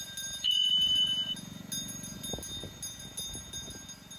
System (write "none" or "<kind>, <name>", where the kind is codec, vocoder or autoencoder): none